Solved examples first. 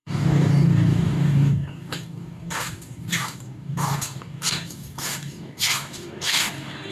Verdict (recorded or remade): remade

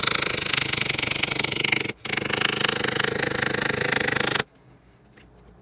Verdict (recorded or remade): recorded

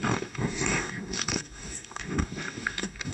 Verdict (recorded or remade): remade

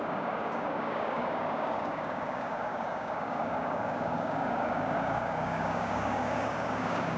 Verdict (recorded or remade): remade